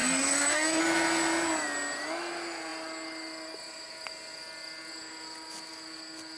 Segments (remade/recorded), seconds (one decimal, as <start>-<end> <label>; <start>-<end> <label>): 0.0-0.8 remade; 0.8-6.4 recorded